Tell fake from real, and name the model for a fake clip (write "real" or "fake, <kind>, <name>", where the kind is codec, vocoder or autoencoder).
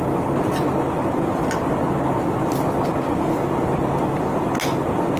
real